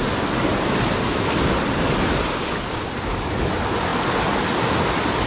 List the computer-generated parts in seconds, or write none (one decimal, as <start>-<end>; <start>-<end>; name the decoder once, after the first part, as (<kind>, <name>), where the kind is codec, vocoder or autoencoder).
none